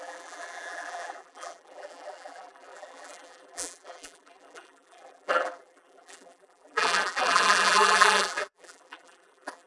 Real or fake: fake